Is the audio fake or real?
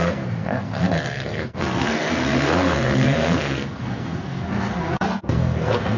fake